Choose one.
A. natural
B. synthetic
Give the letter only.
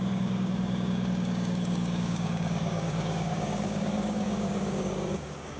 B